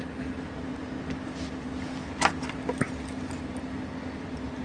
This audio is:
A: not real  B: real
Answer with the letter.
B